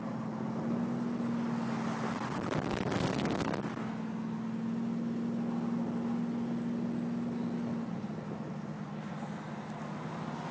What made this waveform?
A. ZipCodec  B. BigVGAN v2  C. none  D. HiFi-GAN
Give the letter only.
C